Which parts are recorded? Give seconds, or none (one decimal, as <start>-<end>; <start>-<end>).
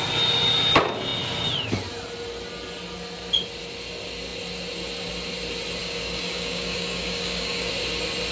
0.0-5.8; 7.7-8.3